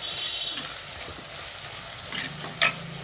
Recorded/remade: recorded